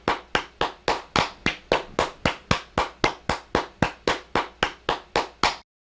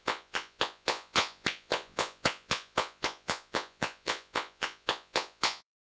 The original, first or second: first